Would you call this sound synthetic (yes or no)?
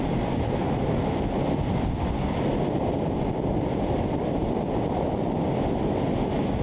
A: no